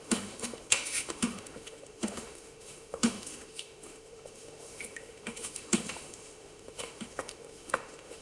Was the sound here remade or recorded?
remade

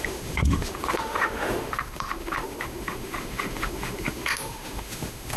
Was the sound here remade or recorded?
remade